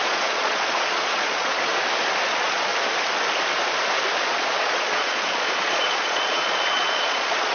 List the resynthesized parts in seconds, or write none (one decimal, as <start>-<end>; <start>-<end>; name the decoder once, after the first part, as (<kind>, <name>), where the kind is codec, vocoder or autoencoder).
0.0-1.7 (vocoder, Vocos); 2.3-2.7; 4.2-7.5

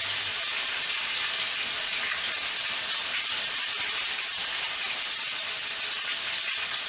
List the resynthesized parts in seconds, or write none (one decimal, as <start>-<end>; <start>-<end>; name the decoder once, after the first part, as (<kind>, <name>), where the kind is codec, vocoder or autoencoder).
none